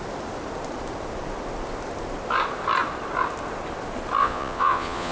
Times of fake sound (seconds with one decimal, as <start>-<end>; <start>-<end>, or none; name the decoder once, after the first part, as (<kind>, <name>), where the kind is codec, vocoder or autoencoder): 4.2-5.1 (vocoder, Vocos)